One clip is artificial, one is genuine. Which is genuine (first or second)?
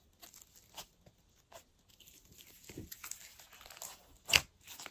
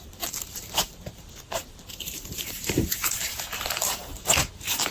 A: first